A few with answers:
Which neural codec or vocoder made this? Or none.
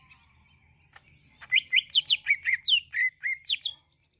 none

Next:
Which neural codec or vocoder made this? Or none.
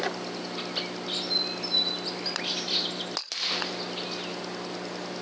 none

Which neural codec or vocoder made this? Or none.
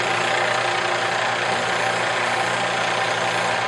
none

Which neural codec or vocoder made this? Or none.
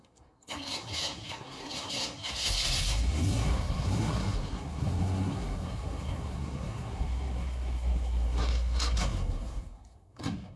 codec, SNAC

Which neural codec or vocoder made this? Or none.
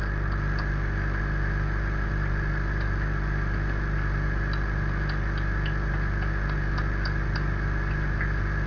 none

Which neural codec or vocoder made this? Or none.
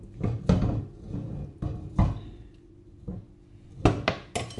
none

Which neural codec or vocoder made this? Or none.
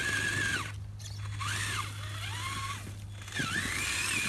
none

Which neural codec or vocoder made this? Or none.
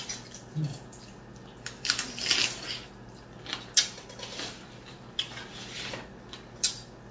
none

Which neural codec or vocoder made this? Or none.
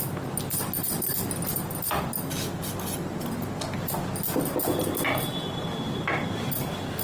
none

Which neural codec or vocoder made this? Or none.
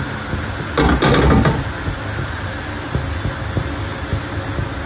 none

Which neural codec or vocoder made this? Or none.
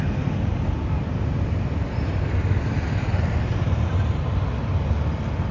none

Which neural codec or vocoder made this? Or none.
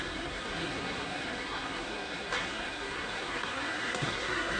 codec, SNAC